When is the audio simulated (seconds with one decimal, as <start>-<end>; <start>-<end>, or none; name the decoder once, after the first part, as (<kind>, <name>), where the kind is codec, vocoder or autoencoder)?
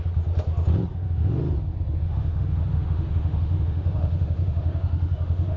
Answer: 0.9-1.4 (autoencoder, DAC-VAE); 2.0-5.6